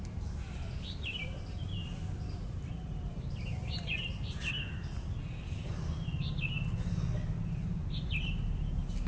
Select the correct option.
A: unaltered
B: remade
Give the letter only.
A